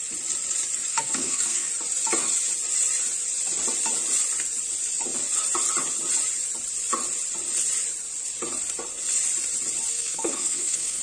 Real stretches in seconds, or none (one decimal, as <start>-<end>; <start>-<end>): 0.0-0.9; 1.7-9.9